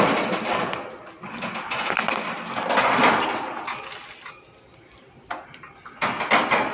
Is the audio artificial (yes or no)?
no